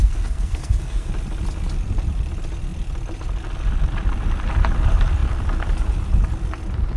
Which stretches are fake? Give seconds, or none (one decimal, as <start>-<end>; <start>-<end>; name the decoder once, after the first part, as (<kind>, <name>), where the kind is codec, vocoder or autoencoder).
0.0-1.1 (codec, SNAC)